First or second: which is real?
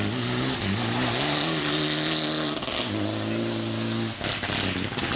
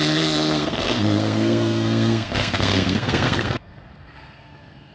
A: first